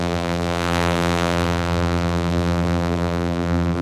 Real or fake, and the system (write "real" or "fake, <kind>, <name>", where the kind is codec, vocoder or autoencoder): fake, vocoder, BigVGAN v2